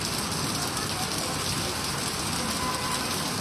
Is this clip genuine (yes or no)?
no